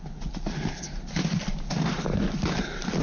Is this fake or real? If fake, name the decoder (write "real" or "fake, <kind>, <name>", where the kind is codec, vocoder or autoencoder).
real